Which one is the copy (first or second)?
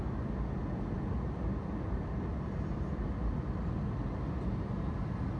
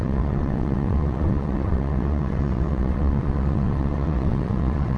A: second